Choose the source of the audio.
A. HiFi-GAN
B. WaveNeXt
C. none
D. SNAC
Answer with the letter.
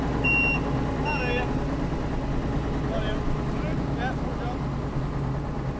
C